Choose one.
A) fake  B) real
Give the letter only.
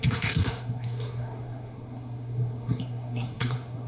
A